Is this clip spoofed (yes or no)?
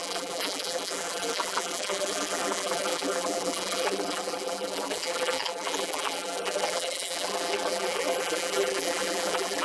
yes